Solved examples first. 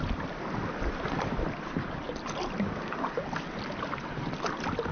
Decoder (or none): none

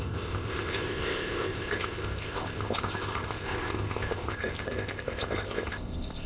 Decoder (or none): codec, ZipCodec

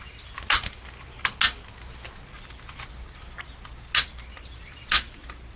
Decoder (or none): none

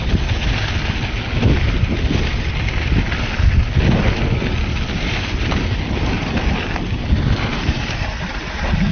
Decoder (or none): none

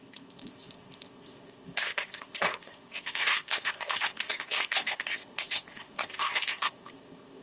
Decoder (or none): codec, ZipCodec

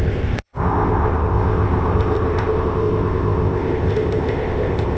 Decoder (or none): codec, ZipCodec